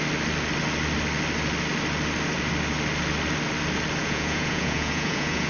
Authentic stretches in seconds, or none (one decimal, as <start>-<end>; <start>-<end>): 0.0-4.0